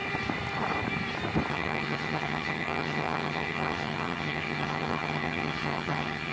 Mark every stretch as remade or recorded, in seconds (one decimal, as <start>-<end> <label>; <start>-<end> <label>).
0.0-1.5 recorded; 1.5-6.3 remade